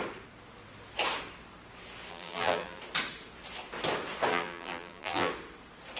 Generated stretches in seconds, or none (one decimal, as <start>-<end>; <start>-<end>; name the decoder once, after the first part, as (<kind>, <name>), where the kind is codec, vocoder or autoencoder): 2.1-2.8 (vocoder, BigVGAN v2); 4.3-5.3